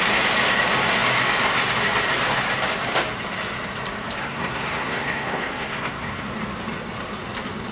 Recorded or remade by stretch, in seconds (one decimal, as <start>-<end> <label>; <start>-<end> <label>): 0.0-4.2 recorded; 4.2-6.3 remade; 6.3-7.7 recorded